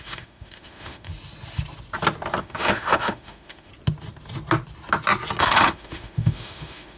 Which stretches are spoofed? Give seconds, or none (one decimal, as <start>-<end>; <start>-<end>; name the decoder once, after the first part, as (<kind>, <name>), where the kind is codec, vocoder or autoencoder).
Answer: 0.0-1.1 (autoencoder, DAC-VAE); 2.4-3.7; 5.4-7.0